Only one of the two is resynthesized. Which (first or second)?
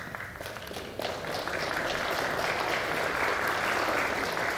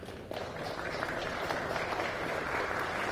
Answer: second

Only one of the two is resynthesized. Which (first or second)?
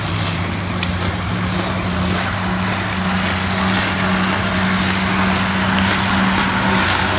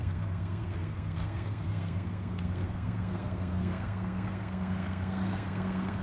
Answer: second